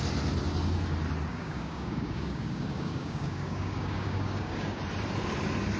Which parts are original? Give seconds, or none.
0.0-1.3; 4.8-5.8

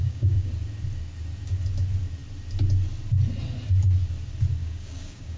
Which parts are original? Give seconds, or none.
0.5-4.6

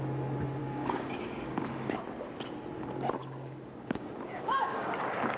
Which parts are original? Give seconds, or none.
0.0-0.6; 2.0-3.2

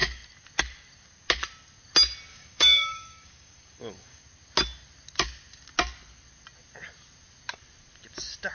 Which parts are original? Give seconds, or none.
0.0-2.3; 4.2-8.5

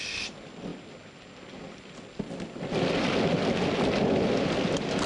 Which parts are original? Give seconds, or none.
0.0-5.1